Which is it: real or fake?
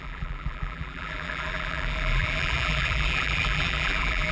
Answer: fake